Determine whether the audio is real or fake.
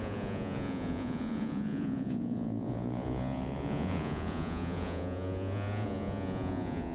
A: fake